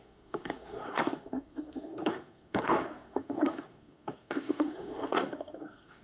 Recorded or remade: remade